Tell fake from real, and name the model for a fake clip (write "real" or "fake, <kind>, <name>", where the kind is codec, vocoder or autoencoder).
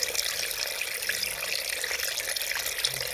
real